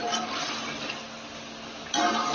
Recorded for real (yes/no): yes